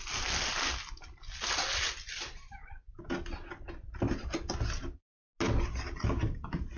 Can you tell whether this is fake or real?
real